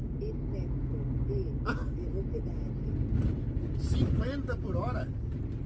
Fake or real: real